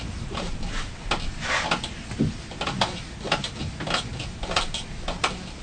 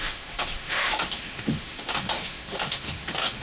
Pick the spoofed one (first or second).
second